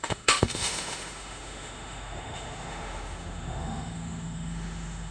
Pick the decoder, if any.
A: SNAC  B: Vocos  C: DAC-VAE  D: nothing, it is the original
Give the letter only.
C